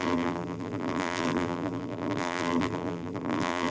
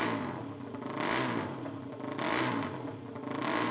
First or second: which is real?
second